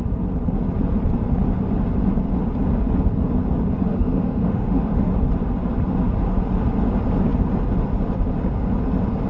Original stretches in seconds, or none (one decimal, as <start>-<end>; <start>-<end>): 0.0-3.9; 5.1-9.3